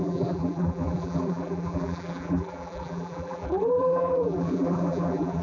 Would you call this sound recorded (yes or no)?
no